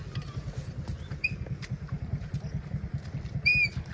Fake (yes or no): no